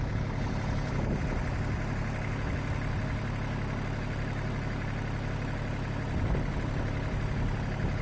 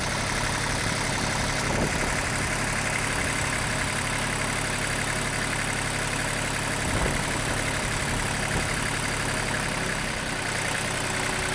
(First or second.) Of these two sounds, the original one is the first